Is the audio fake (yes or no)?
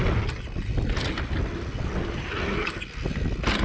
no